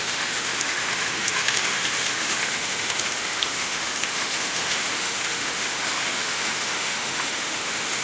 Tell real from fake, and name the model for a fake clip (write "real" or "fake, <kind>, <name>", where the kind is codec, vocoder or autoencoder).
fake, autoencoder, DAC-VAE